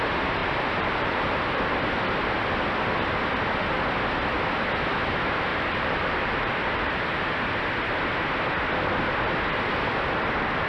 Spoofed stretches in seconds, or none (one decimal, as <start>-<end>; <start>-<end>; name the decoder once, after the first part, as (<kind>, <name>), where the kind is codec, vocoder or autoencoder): 0.4-1.8 (vocoder, BigVGAN v2); 5.5-7.4